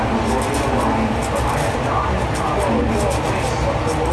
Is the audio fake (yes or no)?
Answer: no